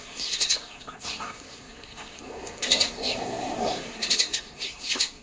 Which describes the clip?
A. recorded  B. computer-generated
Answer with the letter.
B